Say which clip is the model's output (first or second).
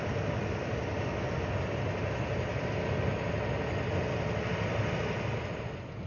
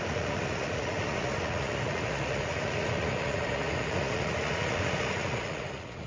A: second